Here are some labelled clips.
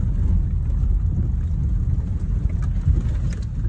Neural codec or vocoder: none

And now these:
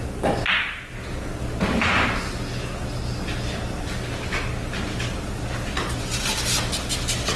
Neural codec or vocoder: none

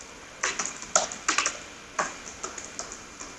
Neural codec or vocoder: none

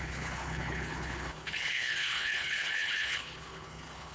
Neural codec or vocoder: codec, HILCodec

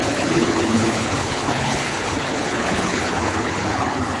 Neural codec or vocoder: codec, HILCodec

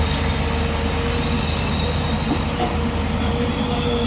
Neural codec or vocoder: none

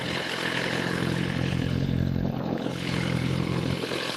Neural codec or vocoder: codec, HILCodec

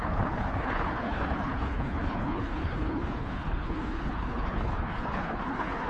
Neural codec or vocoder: codec, HILCodec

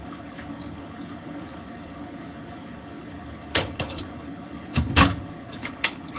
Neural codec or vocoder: codec, HILCodec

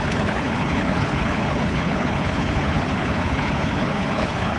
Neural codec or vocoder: codec, HILCodec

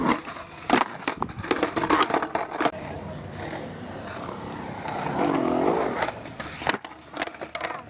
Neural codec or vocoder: none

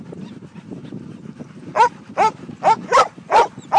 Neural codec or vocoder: none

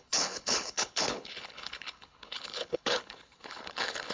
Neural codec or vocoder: codec, HILCodec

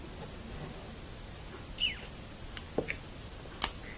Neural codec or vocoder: none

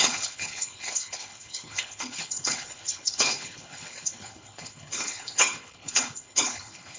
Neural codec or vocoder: codec, HILCodec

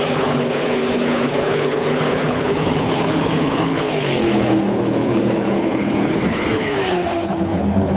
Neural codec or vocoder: codec, HILCodec